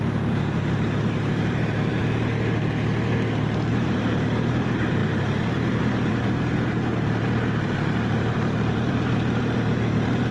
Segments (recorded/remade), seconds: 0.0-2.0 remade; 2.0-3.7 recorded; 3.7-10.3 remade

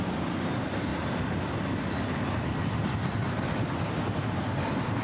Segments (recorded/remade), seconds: 0.0-5.0 recorded

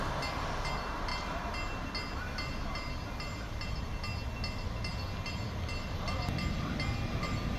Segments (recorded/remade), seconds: 0.0-7.6 recorded